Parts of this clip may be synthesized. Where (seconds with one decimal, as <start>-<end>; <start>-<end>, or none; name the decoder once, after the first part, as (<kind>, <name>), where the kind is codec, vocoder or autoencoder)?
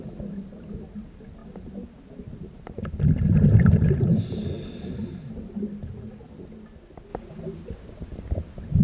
none